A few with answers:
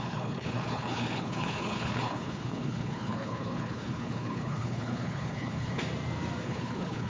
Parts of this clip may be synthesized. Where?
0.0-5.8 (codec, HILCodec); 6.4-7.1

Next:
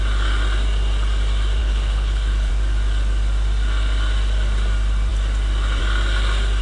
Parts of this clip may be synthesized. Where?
1.6-2.5 (codec, HILCodec)

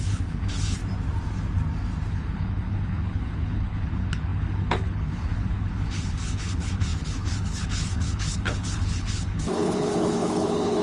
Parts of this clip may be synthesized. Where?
0.0-0.8 (codec, HILCodec); 2.1-10.8

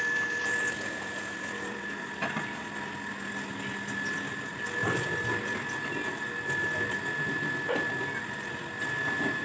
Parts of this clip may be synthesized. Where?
none

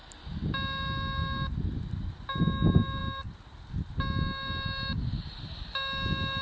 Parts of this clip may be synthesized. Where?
none

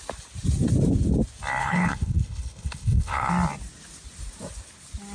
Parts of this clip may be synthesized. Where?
1.6-3.3 (codec, HILCodec)